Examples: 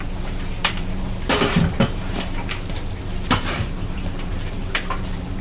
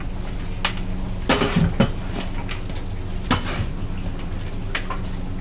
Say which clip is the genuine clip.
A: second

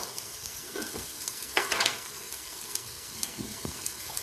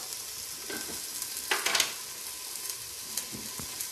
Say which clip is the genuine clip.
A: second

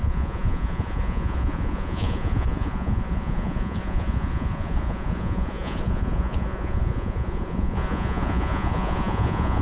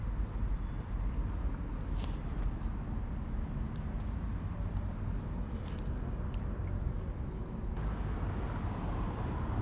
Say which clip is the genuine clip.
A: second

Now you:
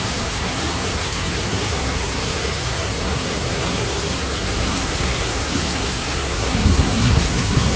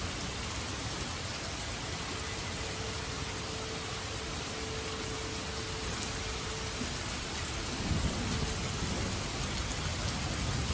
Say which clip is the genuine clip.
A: second